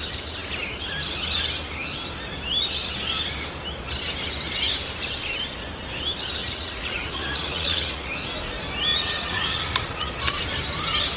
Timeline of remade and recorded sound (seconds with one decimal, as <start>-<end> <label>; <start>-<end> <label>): 0.0-6.4 recorded; 6.4-8.1 remade; 8.1-8.9 recorded; 8.9-10.1 remade; 10.1-11.2 recorded